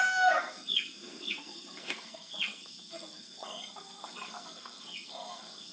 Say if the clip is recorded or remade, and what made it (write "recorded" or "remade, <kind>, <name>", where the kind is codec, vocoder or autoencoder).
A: remade, codec, SNAC